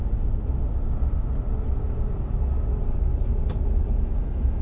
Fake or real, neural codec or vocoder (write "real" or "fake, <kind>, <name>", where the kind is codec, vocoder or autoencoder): real